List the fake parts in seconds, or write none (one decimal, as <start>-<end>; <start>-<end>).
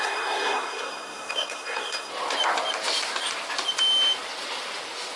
0.0-2.1